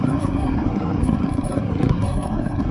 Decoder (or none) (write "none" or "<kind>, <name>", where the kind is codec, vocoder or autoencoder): codec, SNAC